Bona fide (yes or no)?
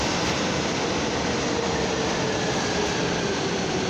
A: yes